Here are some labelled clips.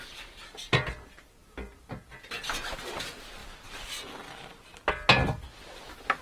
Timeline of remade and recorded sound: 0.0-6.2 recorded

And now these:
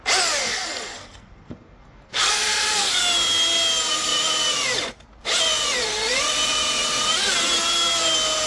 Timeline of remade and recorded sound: 0.0-0.4 recorded; 0.4-3.0 remade; 3.0-8.5 recorded